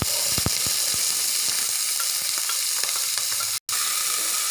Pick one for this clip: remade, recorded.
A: recorded